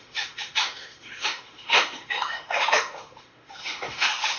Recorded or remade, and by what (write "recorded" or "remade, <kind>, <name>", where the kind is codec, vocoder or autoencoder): remade, autoencoder, DAC-VAE